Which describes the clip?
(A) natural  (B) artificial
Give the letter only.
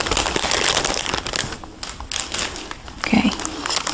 A